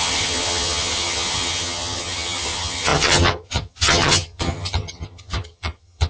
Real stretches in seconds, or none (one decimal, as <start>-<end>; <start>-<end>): none